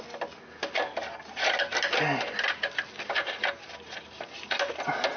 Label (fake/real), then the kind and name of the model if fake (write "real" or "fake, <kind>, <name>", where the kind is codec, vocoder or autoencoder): real